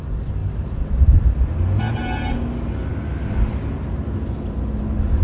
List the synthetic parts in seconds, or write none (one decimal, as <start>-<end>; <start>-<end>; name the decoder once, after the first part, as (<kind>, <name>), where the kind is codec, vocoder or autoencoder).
none